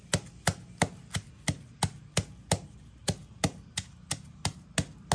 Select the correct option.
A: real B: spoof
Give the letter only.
A